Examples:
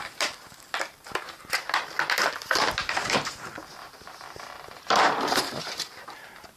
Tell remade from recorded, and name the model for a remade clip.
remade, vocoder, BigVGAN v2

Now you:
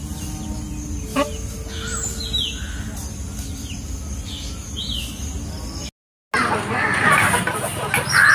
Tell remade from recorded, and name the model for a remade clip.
recorded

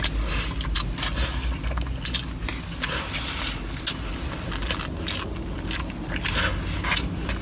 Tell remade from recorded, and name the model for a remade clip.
recorded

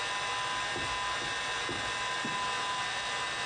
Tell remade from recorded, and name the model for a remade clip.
recorded